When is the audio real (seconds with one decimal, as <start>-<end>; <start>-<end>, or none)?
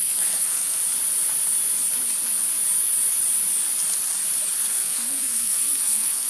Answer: 0.8-4.6